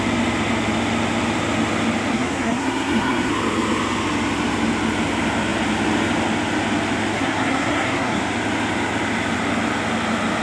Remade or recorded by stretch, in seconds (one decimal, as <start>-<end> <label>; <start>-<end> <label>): 0.0-2.1 recorded; 2.1-3.3 remade; 3.3-7.1 recorded; 7.1-8.2 remade; 8.2-10.4 recorded